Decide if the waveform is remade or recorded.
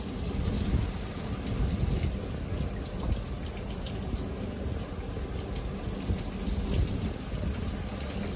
recorded